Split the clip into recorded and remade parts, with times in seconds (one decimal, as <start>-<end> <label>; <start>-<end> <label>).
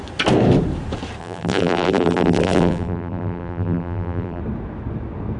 0.0-1.2 recorded; 1.2-4.4 remade; 4.4-5.4 recorded